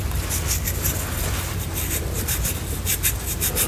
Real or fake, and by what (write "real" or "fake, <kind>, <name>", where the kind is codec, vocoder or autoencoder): real